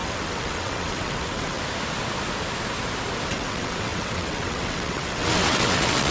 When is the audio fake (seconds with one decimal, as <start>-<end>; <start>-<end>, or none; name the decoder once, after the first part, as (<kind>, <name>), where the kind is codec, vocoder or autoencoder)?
0.0-1.6 (vocoder, WaveNeXt); 3.3-6.1